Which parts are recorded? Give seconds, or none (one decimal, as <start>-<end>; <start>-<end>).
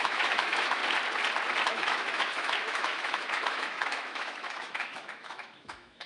0.8-1.7